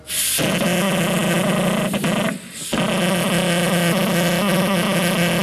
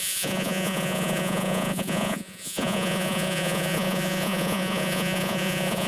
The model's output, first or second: second